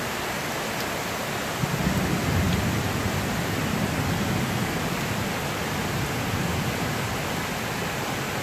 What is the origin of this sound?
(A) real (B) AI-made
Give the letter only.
A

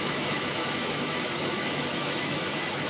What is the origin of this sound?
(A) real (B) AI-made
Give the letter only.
B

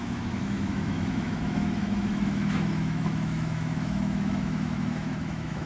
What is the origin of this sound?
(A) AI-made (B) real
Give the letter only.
A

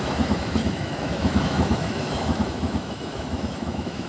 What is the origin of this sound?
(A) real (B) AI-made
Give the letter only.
B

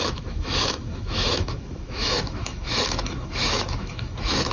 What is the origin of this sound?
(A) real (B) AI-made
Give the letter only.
B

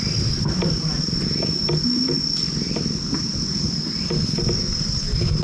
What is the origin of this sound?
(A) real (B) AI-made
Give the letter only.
A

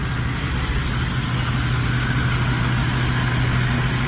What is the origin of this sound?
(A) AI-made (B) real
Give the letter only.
B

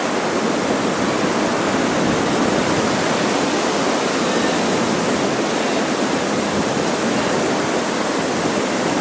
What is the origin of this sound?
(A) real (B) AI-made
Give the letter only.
A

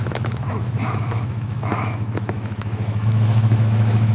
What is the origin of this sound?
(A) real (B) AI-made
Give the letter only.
B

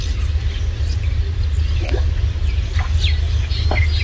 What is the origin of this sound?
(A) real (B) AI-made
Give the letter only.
A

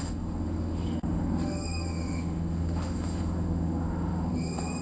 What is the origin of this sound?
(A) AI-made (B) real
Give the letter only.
A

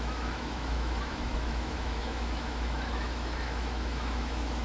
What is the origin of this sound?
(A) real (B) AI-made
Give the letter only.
B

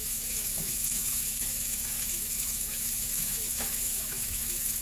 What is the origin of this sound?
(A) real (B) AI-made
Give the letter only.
B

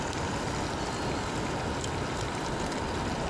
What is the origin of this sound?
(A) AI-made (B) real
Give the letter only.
B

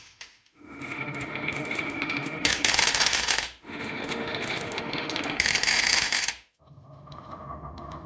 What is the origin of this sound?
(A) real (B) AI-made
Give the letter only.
B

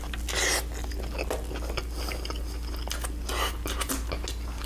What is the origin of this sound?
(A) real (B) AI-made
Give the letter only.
A